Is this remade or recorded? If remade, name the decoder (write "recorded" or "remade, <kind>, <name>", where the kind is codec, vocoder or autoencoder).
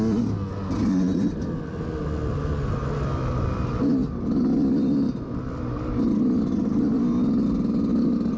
recorded